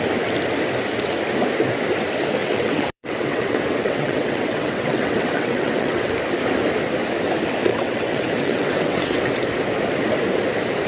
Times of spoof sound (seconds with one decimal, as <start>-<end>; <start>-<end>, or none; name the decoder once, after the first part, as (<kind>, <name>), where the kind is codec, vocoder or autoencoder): 2.4-6.1 (vocoder, WaveNeXt); 7.7-9.3